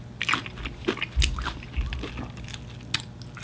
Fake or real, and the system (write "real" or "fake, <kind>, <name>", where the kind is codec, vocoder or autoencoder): real